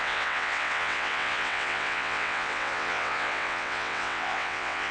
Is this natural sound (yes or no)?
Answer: no